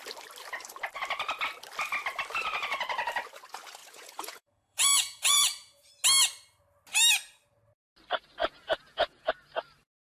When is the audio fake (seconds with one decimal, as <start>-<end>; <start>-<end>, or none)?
3.8-5.9; 8.4-9.3